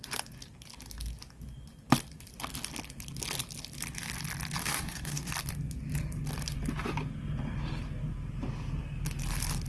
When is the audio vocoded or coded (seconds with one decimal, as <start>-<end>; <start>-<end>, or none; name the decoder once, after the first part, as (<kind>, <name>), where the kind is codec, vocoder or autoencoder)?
4.6-5.3 (codec, DAC)